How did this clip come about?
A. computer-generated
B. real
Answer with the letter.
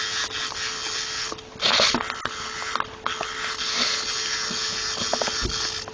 B